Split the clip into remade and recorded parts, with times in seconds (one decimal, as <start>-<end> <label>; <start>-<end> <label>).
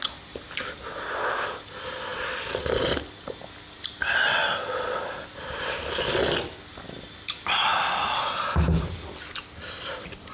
0.0-10.3 recorded